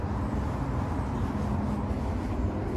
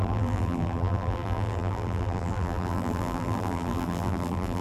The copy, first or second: second